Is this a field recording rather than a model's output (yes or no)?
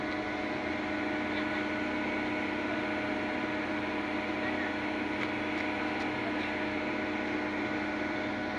yes